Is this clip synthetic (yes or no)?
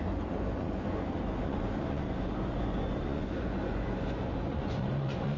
yes